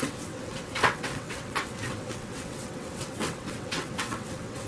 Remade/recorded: remade